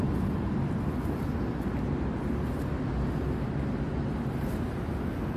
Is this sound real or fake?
real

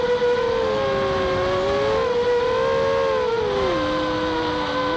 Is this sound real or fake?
real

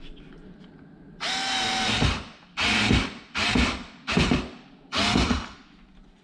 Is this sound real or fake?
real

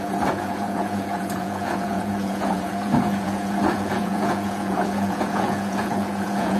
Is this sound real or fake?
fake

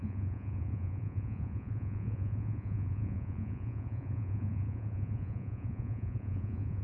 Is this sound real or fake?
fake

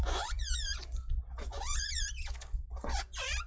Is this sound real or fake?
fake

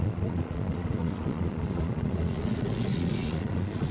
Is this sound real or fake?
fake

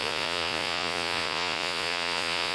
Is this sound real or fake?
fake